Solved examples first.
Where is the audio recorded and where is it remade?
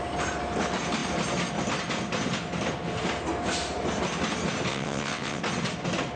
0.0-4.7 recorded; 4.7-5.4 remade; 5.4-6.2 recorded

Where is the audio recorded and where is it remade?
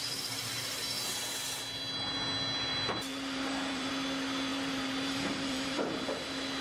0.0-0.8 remade; 0.8-2.7 recorded; 2.7-3.9 remade; 3.9-4.5 recorded; 4.5-5.9 remade; 5.9-6.6 recorded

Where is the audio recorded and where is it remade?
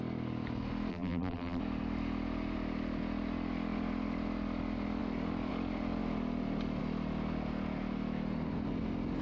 0.0-0.9 recorded; 0.9-1.6 remade; 1.6-9.2 recorded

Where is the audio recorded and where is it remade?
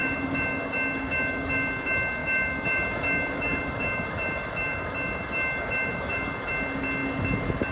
0.0-1.7 remade; 1.7-2.2 recorded; 2.2-6.5 remade; 6.5-7.7 recorded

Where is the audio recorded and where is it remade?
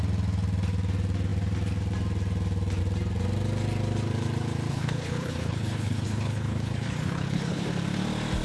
0.0-4.7 recorded; 4.7-7.7 remade; 7.7-8.4 recorded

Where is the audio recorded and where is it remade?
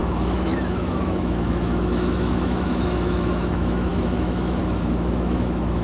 0.0-5.8 remade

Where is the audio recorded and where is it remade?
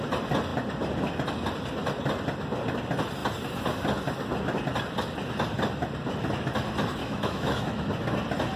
0.0-7.0 recorded; 7.0-7.9 remade; 7.9-8.6 recorded